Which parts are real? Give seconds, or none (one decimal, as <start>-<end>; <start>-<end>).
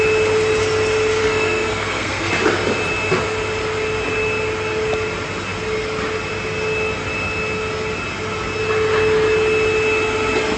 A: 0.0-1.2; 2.3-10.6